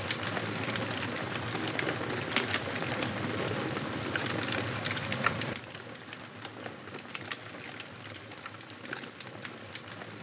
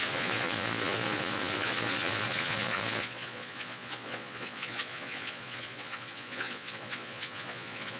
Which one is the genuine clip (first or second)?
first